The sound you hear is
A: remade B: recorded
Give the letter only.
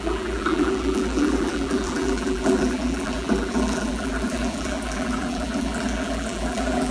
A